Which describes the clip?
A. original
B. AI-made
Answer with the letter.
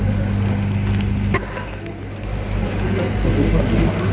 A